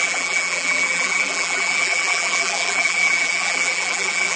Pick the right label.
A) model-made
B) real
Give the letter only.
A